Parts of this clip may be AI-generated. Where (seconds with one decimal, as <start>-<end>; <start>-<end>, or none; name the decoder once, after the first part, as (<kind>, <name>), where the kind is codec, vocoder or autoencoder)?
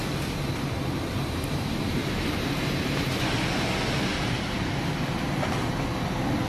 0.0-3.1 (vocoder, BigVGAN v2); 4.1-4.9